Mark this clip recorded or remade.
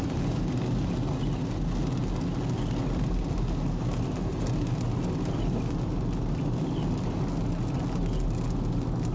recorded